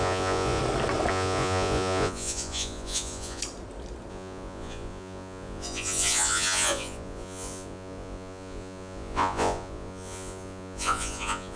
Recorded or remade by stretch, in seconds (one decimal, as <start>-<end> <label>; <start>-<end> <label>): 0.0-0.6 remade; 0.6-1.1 recorded; 1.1-3.4 remade; 3.4-4.1 recorded; 4.1-11.6 remade